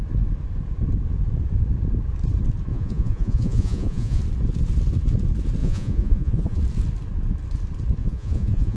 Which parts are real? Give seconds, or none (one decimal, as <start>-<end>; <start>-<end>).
0.0-2.7; 4.2-5.6; 6.6-8.0